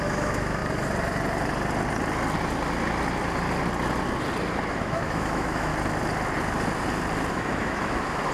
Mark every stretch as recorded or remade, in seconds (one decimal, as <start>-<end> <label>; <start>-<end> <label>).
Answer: 0.0-0.6 remade; 0.6-4.7 recorded; 4.7-5.7 remade; 5.7-7.3 recorded; 7.3-8.3 remade

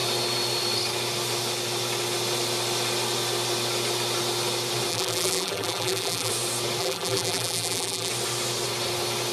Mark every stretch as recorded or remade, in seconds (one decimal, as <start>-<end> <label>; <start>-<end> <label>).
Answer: 0.0-4.9 recorded; 4.9-6.3 remade; 6.3-6.8 recorded; 6.8-8.1 remade; 8.1-9.3 recorded

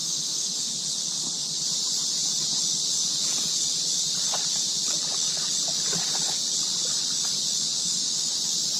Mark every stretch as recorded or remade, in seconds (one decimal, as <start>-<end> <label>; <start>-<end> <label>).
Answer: 0.0-0.7 remade; 0.7-7.8 recorded; 7.8-8.3 remade; 8.3-8.8 recorded